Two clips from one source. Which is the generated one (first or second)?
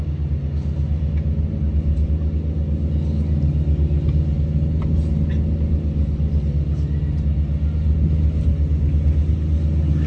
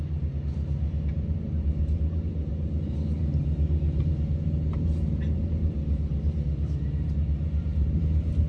second